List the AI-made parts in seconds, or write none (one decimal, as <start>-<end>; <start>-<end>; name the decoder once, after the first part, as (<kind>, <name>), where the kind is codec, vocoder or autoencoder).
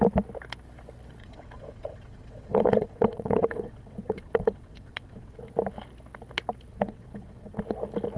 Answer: 1.2-5.4 (vocoder, WaveNeXt); 6.7-7.6